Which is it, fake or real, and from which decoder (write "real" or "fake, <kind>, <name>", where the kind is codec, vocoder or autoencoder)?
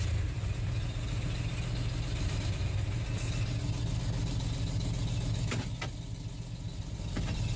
real